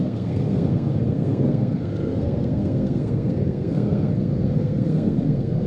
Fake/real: fake